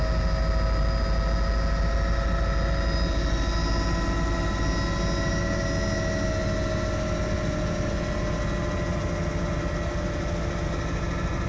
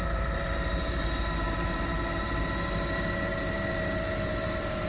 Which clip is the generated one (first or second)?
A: second